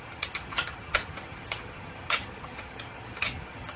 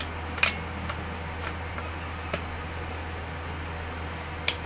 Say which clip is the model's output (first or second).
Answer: first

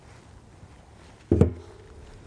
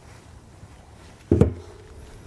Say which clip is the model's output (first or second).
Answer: second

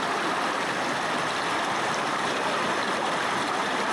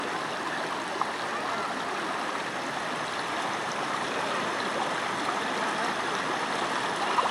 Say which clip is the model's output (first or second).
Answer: first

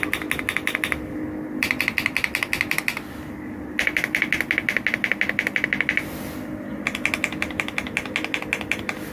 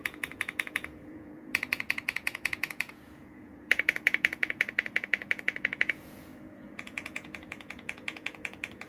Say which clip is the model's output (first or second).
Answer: second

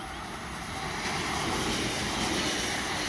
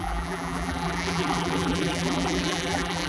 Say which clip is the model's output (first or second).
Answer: second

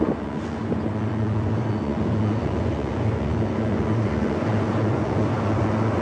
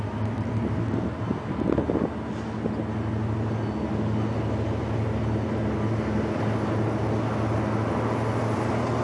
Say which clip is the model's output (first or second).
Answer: first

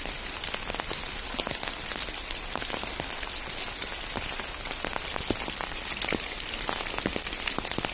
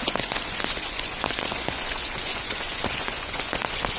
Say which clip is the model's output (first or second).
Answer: second